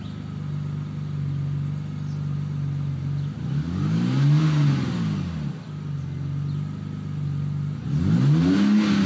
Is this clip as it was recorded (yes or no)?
yes